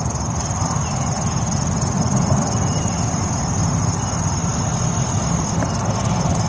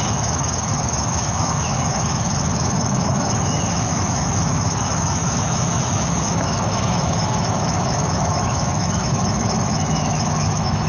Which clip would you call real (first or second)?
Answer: first